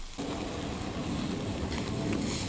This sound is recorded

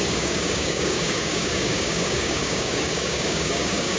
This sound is remade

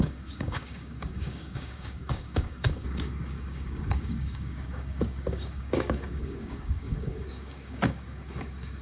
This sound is remade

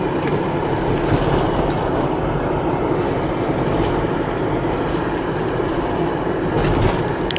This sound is recorded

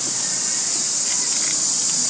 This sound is recorded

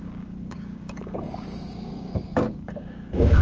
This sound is remade